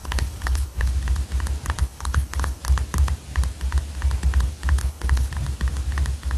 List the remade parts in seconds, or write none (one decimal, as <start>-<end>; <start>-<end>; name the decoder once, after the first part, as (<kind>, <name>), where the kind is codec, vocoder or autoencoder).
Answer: 0.0-0.9 (codec, HILCodec); 1.8-2.6; 4.8-5.3

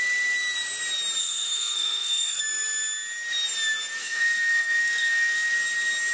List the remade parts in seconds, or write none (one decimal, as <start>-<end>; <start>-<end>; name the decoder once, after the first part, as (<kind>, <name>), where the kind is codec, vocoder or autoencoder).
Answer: 1.2-2.4 (codec, SNAC); 4.0-5.5

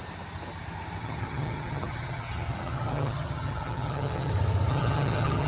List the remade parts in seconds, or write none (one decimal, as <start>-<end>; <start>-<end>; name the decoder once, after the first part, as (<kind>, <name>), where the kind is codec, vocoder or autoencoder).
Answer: 1.0-4.3 (vocoder, HiFi-GAN); 4.7-5.5

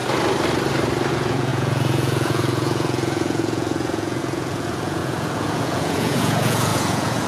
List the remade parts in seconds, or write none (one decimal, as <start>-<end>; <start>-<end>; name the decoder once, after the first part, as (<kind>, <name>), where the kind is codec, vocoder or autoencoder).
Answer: 1.1-7.3 (vocoder, Vocos)

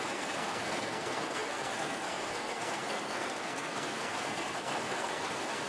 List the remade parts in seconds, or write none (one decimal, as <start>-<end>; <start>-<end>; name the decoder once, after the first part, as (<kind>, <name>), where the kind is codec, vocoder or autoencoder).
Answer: 0.0-5.7 (codec, SNAC)